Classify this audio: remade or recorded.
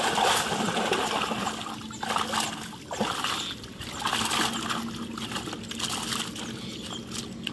recorded